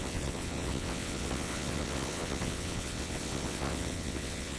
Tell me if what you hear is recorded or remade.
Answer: remade